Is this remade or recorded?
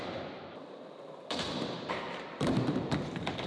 remade